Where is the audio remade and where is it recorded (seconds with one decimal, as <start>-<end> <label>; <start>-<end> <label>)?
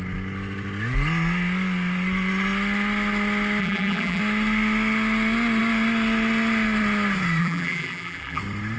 0.0-3.6 recorded; 3.6-4.2 remade; 4.2-7.4 recorded; 7.4-8.4 remade; 8.4-8.8 recorded